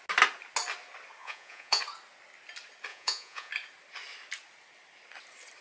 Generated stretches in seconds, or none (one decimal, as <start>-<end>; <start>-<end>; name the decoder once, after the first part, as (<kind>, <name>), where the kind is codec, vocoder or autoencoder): 1.2-1.8 (vocoder, Vocos); 2.9-3.5